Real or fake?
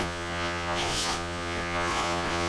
fake